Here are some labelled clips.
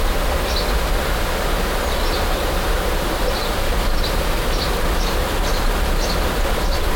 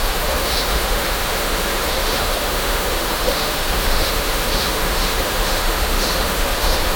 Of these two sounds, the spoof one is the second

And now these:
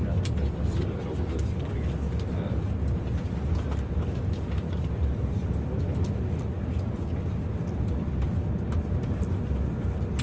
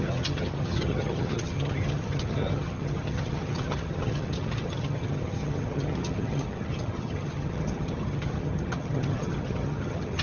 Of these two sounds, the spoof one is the second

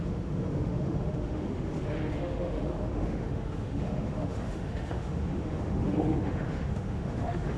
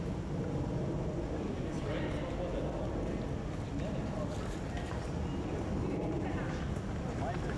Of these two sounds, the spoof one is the first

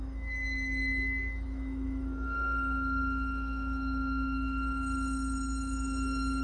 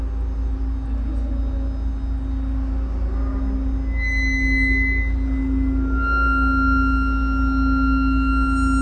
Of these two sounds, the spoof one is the first